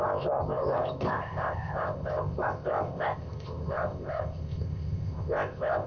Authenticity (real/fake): fake